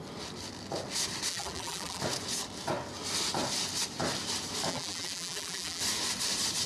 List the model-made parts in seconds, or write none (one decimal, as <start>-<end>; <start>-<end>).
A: 1.3-2.0; 4.7-5.8